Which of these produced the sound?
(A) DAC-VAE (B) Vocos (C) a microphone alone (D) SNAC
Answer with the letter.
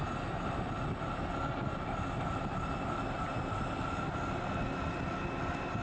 C